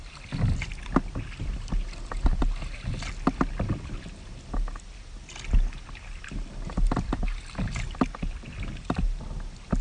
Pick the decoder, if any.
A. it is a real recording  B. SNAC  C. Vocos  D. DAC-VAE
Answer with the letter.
A